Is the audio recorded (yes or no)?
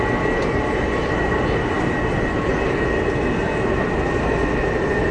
yes